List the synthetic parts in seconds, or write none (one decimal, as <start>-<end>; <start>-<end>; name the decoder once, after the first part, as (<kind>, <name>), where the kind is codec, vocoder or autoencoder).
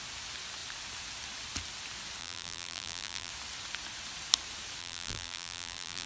2.2-3.3 (vocoder, BigVGAN v2); 4.8-6.1